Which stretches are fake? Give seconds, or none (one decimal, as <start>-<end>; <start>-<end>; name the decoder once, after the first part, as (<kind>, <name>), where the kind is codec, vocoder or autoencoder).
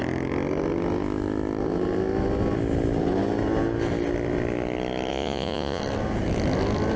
5.1-5.8 (vocoder, Vocos)